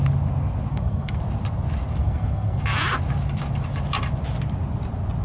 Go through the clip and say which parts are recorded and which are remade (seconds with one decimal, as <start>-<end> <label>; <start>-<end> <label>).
0.0-0.7 recorded; 0.7-1.2 remade; 1.2-2.0 recorded; 2.0-2.6 remade; 2.6-5.2 recorded